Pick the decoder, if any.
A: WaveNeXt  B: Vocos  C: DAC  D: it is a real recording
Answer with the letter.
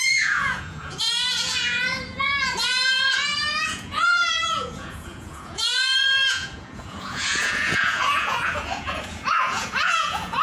B